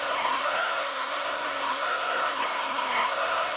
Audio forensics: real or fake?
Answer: fake